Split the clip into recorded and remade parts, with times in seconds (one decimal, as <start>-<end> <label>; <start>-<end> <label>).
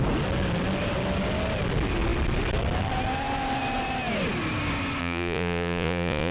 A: 0.0-5.0 recorded; 5.0-6.3 remade